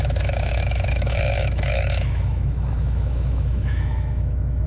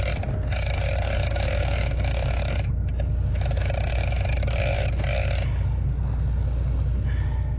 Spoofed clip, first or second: first